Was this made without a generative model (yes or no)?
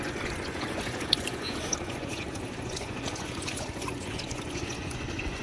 no